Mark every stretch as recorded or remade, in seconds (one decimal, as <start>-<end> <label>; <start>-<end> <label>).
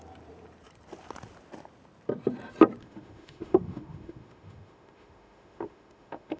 0.0-2.8 recorded; 2.8-6.4 remade